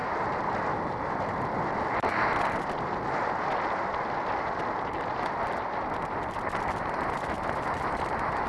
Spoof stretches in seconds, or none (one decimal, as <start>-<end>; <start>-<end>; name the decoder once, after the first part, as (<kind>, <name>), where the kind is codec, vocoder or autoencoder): none